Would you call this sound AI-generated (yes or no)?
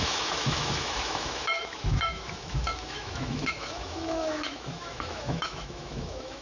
yes